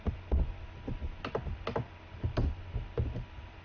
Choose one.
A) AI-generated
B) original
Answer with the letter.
B